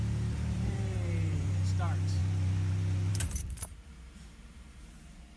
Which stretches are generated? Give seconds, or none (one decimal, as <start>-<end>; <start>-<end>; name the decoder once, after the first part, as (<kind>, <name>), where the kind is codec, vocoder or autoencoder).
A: 0.0-2.2 (vocoder, BigVGAN v2); 3.1-5.4